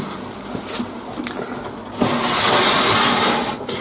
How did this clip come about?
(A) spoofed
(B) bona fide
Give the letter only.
B